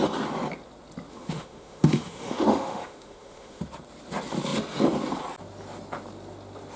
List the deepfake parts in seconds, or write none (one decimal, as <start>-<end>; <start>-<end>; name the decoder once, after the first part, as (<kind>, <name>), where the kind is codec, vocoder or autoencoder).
1.1-3.6 (autoencoder, DAC-VAE)